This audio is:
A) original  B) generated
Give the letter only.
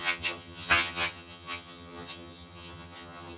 B